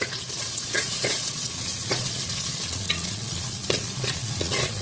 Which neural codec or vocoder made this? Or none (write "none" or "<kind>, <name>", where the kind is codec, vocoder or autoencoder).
vocoder, Vocos